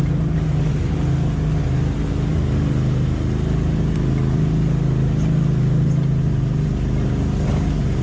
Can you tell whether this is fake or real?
real